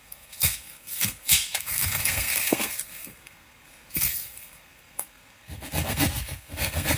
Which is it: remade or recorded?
remade